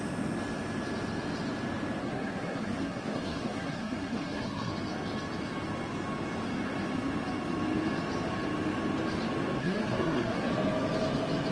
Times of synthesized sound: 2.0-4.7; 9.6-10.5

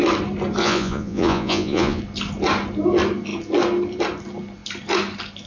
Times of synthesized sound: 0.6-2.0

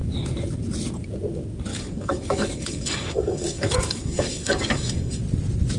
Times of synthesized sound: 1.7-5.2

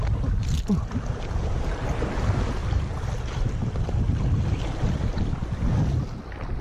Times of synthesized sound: 2.6-3.6

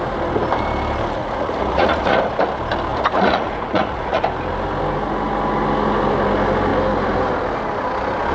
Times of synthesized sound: 1.2-2.2; 2.9-4.2